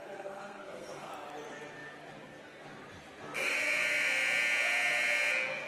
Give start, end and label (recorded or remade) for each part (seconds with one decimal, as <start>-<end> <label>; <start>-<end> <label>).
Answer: 0.0-1.1 remade; 1.1-5.7 recorded